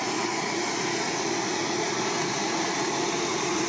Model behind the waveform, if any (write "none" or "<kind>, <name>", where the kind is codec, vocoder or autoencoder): vocoder, Vocos